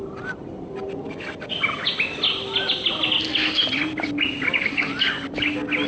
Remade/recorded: recorded